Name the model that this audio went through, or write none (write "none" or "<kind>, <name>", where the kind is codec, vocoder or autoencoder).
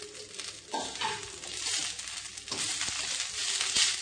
none